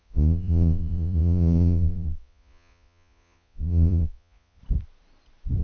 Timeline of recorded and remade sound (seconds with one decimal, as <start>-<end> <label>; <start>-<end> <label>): 0.0-4.6 remade; 4.6-5.6 recorded